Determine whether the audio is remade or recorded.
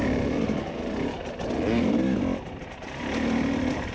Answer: recorded